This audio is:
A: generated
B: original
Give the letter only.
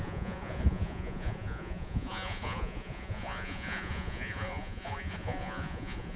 A